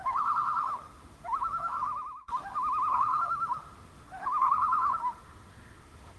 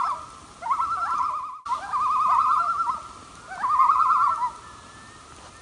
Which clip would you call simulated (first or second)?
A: first